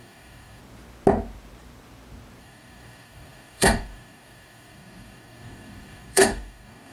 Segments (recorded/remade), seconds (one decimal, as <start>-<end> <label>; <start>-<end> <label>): 0.0-0.6 remade; 0.6-2.4 recorded; 2.4-6.9 remade

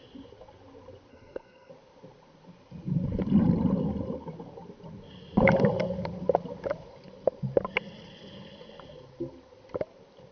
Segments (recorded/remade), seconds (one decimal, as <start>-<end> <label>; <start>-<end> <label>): 0.0-1.1 recorded; 1.1-1.7 remade; 1.7-10.3 recorded